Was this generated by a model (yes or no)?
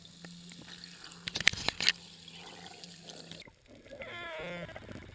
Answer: no